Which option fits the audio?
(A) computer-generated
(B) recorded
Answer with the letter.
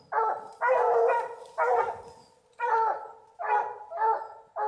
B